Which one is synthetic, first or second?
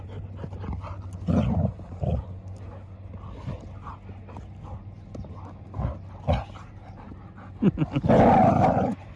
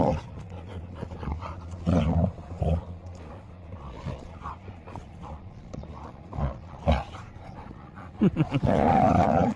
second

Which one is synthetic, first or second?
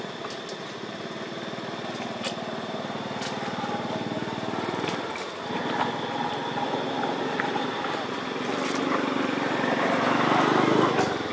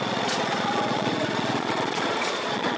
second